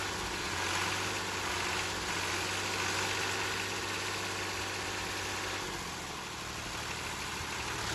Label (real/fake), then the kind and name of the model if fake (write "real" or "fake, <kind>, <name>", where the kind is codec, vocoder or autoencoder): real